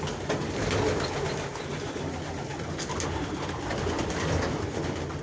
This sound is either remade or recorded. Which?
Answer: recorded